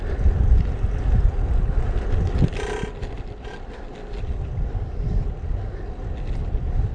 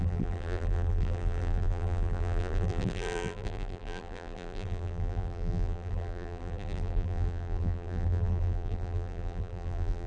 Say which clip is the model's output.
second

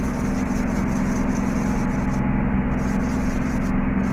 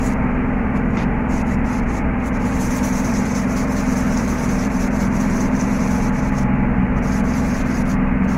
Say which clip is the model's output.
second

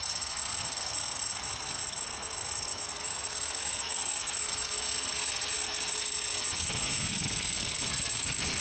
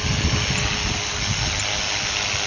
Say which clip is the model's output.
first